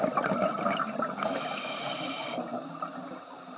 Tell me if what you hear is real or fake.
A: real